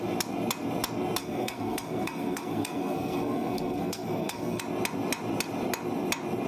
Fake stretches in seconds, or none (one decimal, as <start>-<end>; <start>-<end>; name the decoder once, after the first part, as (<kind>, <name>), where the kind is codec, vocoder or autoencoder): 1.2-4.6 (codec, SNAC)